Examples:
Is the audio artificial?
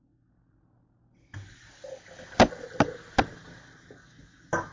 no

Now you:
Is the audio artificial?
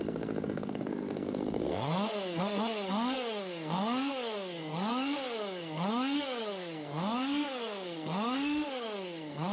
yes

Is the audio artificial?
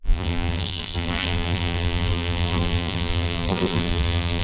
yes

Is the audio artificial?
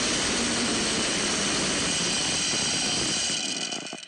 no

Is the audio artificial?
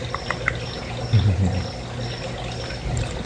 no